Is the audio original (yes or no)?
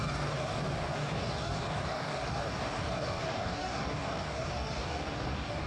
no